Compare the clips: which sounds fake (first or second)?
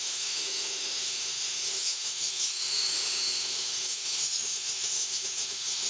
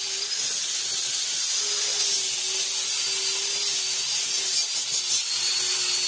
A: first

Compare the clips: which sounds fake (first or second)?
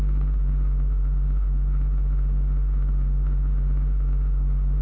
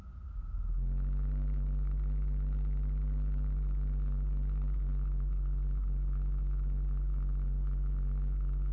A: first